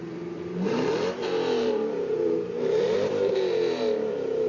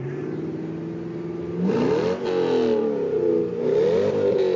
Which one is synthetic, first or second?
first